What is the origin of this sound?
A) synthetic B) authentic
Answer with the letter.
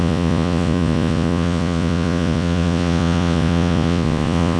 A